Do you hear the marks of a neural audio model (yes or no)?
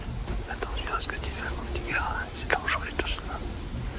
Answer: no